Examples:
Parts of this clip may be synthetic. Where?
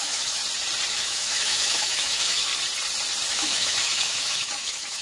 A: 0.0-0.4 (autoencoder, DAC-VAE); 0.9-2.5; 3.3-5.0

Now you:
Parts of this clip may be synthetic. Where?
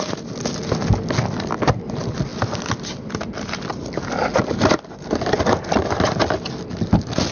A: none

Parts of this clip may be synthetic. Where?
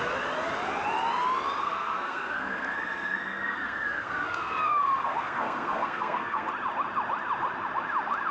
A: 1.6-6.5 (codec, SNAC)